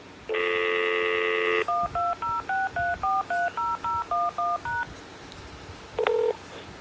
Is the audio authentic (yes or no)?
yes